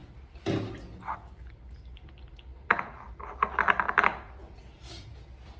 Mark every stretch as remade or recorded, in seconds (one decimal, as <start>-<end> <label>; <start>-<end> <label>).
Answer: 0.0-4.4 recorded; 4.4-5.6 remade